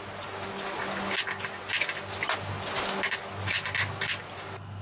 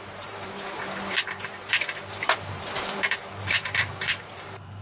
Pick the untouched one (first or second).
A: first